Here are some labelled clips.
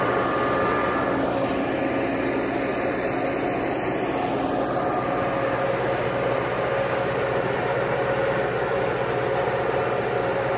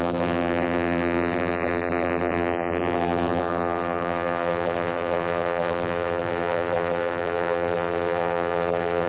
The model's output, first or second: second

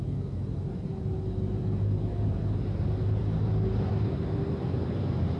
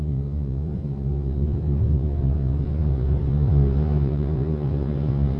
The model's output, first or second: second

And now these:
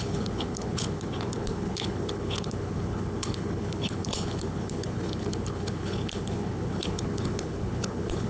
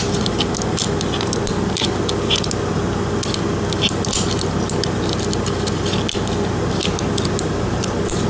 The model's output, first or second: first